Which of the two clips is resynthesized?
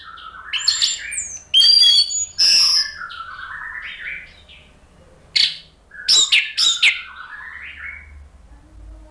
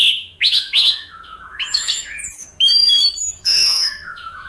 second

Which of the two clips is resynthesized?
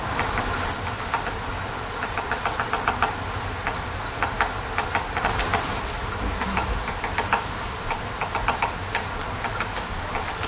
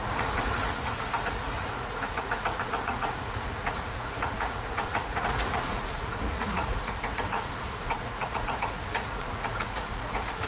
second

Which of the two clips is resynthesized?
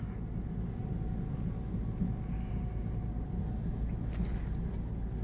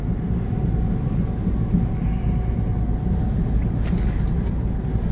second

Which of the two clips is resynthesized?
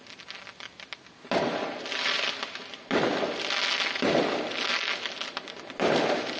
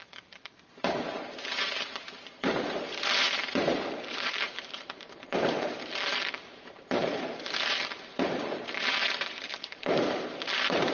second